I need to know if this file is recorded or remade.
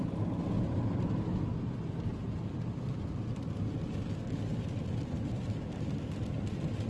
recorded